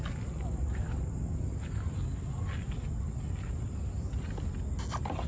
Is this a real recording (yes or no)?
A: yes